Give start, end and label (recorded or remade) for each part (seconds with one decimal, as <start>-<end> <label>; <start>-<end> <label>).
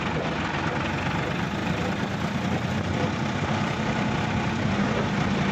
0.0-1.6 recorded; 1.6-4.7 remade; 4.7-5.5 recorded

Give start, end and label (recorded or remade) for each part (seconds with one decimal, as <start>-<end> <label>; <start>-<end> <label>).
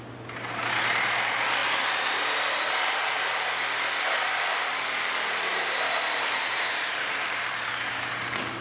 0.0-5.5 recorded; 5.5-7.5 remade; 7.5-8.6 recorded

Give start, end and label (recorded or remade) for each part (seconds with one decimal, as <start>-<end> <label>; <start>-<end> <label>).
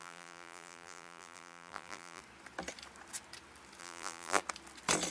0.0-2.2 remade; 2.2-3.8 recorded; 3.8-4.4 remade; 4.4-5.1 recorded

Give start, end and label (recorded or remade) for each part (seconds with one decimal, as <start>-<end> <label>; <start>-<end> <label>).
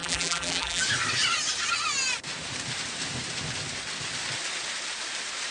0.0-0.8 remade; 0.8-5.5 recorded